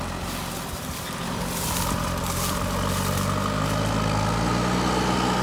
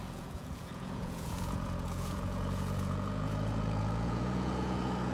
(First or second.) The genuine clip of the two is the first